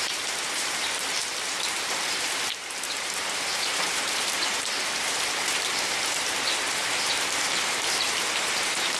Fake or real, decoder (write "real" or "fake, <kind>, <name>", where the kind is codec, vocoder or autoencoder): fake, vocoder, BigVGAN v2